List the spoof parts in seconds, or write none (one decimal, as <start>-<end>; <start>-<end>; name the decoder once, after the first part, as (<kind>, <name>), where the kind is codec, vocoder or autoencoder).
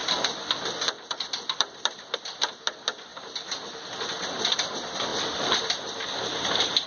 0.0-2.0 (vocoder, BigVGAN v2); 5.1-5.8